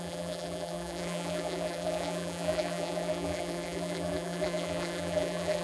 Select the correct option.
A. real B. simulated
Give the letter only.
B